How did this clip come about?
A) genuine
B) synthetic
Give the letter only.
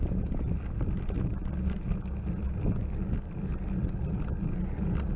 A